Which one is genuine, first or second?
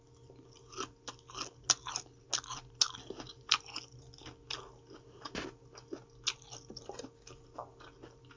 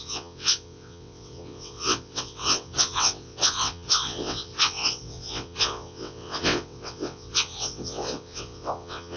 first